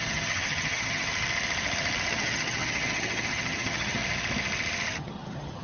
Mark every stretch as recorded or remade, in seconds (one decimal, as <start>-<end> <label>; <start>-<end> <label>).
0.0-1.1 remade; 1.1-2.1 recorded; 2.1-4.0 remade; 4.0-5.0 recorded; 5.0-5.6 remade

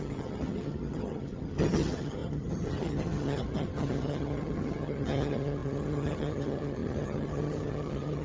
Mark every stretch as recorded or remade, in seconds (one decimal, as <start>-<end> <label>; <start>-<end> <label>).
0.0-8.2 remade

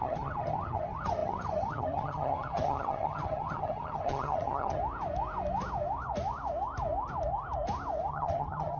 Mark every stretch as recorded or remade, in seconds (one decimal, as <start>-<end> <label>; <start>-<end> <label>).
0.0-4.8 remade; 4.8-8.1 recorded; 8.1-8.8 remade

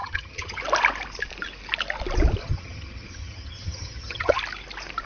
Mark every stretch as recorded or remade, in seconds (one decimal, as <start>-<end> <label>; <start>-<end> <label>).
0.0-0.6 remade; 0.6-2.4 recorded; 2.4-4.4 remade; 4.4-5.1 recorded